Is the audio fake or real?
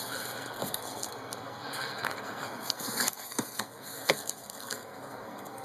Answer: fake